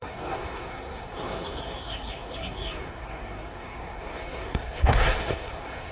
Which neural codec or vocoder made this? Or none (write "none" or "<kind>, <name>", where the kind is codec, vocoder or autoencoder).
codec, SNAC